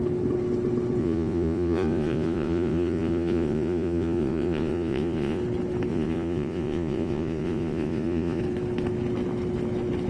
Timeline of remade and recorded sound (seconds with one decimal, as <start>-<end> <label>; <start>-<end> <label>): 0.0-1.0 recorded; 1.0-5.4 remade; 5.4-5.9 recorded; 5.9-8.4 remade; 8.4-10.1 recorded